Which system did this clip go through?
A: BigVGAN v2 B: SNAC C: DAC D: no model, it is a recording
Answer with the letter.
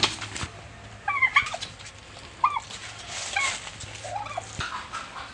D